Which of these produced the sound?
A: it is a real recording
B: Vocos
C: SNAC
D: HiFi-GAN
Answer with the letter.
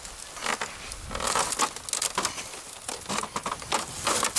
A